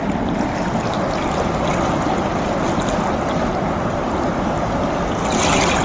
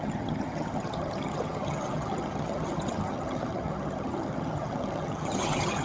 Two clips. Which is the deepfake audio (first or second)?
second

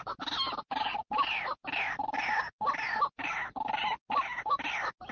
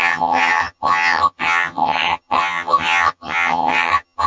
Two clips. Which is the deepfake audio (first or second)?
second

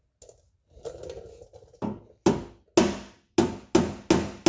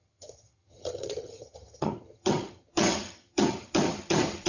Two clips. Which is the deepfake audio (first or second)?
second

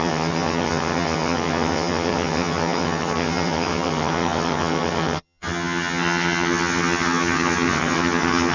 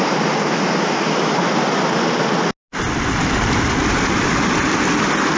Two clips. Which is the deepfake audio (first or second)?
first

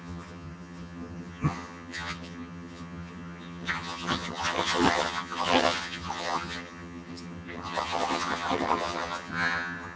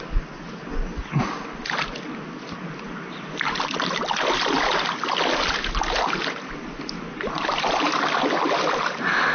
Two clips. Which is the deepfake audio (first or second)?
first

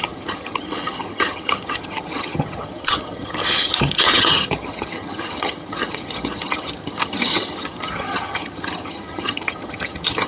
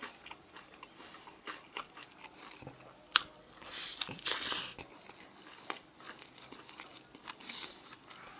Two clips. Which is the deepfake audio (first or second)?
first